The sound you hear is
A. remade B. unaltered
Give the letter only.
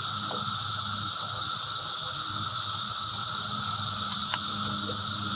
B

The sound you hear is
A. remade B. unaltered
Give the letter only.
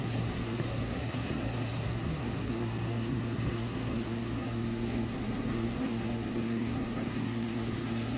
A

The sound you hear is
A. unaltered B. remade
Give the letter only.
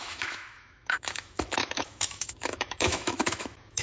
B